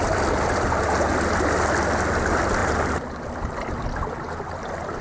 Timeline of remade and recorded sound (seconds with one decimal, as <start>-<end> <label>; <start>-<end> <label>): 0.0-5.0 recorded